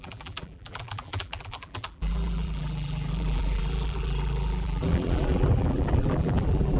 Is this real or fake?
fake